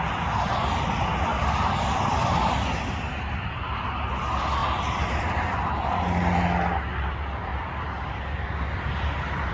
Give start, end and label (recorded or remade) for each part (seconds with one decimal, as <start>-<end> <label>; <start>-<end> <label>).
0.0-9.5 recorded